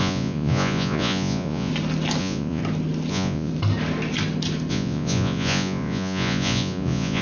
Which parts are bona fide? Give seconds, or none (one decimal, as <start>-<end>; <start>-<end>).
1.7-2.2; 2.6-3.1; 3.5-4.7